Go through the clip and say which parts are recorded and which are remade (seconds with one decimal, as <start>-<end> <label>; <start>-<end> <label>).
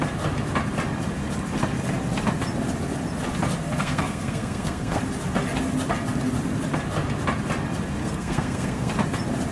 0.0-3.8 recorded; 3.8-5.0 remade; 5.0-8.0 recorded; 8.0-8.9 remade; 8.9-9.5 recorded